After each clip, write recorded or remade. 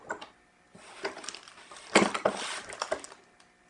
recorded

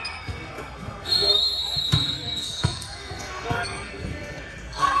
remade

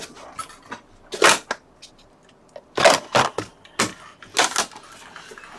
recorded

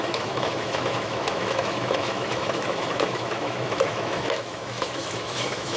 remade